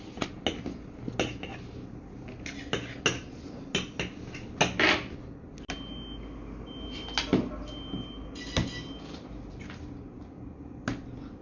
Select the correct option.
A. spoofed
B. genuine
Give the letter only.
B